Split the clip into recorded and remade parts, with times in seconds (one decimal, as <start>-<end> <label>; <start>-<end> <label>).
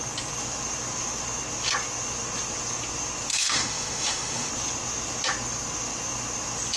0.0-3.3 recorded; 3.3-4.5 remade; 4.5-6.8 recorded